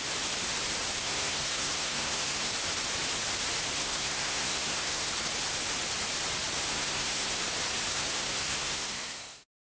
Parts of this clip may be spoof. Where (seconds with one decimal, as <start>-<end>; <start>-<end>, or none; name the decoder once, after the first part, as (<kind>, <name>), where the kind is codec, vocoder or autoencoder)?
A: 1.0-2.5 (codec, SNAC); 3.8-5.1; 6.7-7.4; 7.9-9.7